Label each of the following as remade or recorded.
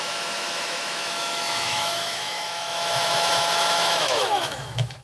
remade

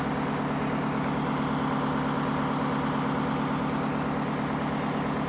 recorded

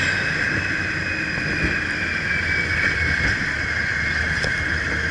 recorded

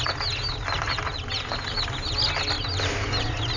recorded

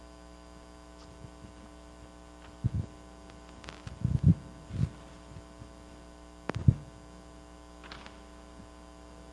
recorded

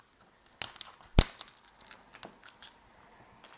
recorded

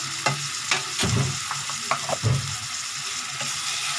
recorded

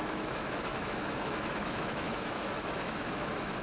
remade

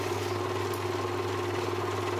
recorded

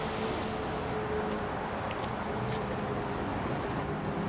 recorded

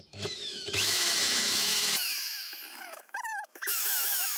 remade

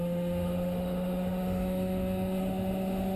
remade